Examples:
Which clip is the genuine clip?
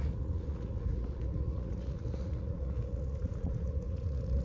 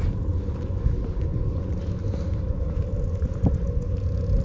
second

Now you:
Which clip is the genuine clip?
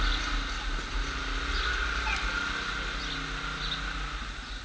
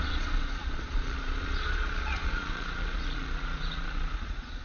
first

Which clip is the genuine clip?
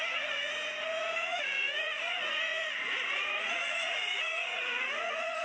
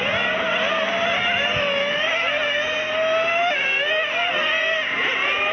second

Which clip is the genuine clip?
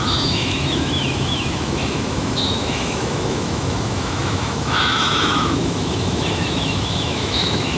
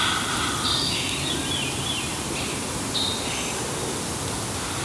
second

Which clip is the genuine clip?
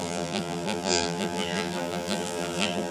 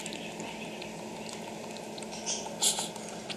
second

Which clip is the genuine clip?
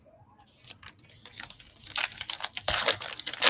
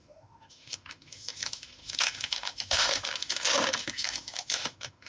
first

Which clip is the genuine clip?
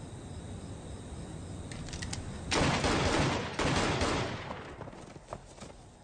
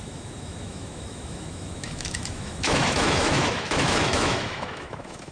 first